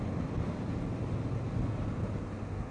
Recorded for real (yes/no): yes